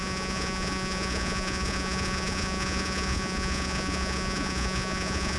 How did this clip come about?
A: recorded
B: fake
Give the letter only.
B